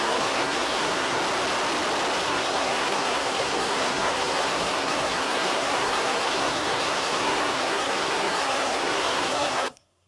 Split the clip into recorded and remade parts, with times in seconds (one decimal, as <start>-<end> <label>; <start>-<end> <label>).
0.0-1.2 remade; 1.2-2.2 recorded; 2.2-10.1 remade